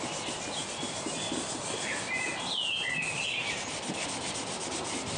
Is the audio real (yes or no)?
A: yes